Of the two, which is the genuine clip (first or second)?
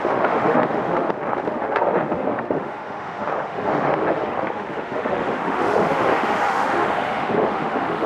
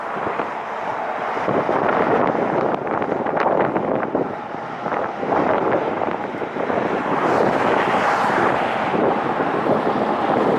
second